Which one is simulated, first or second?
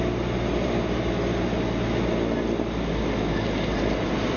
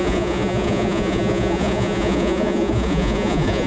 second